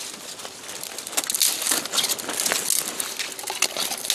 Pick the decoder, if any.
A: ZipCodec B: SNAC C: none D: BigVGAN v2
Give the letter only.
C